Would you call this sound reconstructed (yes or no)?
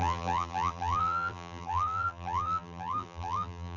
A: yes